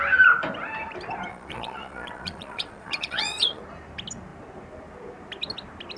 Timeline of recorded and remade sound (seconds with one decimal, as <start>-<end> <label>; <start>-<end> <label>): 0.0-1.3 recorded; 1.3-3.6 remade; 3.6-6.0 recorded